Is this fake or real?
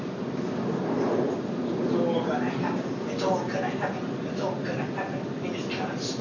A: real